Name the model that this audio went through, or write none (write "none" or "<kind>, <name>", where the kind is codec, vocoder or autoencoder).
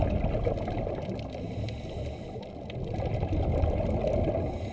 none